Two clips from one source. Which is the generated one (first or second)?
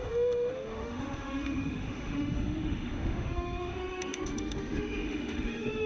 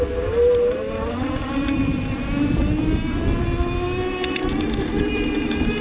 first